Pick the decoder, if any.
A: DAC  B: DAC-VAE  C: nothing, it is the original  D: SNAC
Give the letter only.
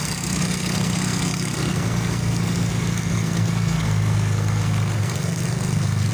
D